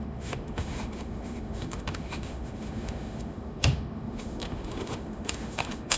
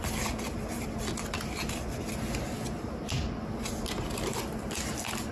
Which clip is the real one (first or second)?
second